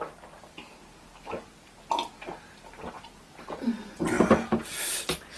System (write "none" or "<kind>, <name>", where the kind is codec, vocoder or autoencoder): none